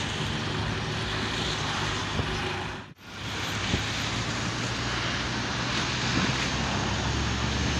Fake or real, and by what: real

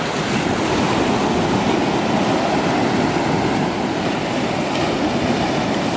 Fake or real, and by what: real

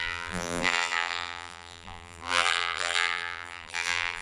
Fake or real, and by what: fake, vocoder, BigVGAN v2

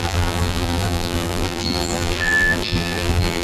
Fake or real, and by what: fake, vocoder, BigVGAN v2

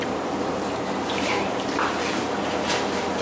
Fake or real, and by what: real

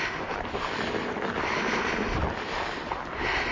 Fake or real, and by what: real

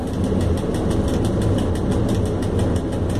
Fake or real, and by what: real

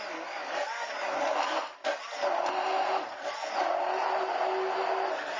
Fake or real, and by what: real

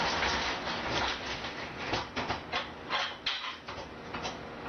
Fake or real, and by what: real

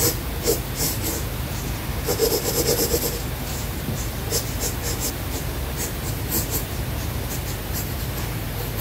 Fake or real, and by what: real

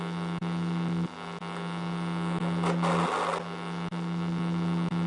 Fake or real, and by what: real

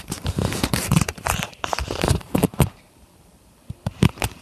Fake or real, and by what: fake, vocoder, BigVGAN v2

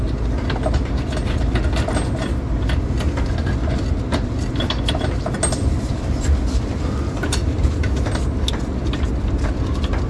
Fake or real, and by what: real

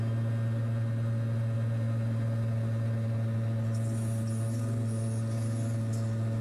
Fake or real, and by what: real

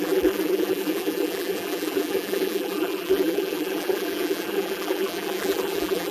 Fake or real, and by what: fake, vocoder, BigVGAN v2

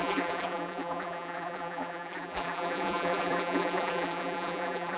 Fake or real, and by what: fake, vocoder, BigVGAN v2